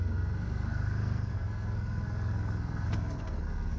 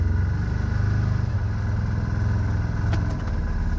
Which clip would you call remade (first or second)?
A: first